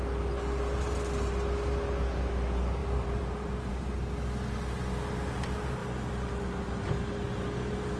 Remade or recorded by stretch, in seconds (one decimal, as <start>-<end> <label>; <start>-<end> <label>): 0.0-2.8 recorded; 2.8-3.7 remade; 3.7-8.0 recorded